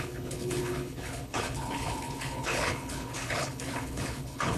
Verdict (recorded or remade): remade